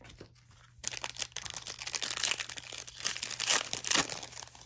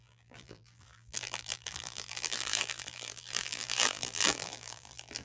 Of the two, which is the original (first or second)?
first